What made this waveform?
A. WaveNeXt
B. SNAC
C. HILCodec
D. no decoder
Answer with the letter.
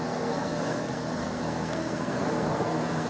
B